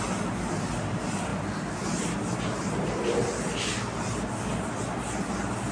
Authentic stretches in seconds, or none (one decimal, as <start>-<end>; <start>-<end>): 0.0-5.7